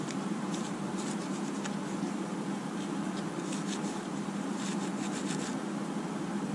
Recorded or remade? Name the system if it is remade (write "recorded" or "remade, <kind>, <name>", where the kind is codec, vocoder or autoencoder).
remade, vocoder, BigVGAN v2